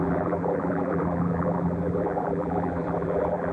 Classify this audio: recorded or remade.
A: remade